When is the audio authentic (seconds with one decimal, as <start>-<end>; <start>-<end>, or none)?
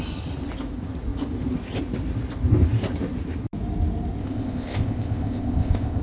0.0-4.2